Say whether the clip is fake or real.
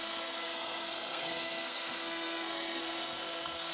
fake